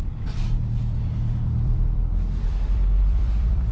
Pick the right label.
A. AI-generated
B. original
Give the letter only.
A